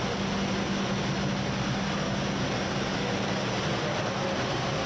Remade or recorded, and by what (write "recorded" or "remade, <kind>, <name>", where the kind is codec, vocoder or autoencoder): recorded